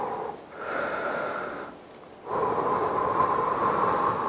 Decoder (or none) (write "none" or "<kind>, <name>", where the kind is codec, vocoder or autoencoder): none